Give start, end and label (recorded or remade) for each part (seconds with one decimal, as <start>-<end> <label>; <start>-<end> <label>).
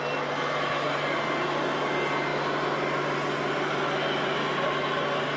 0.0-5.4 recorded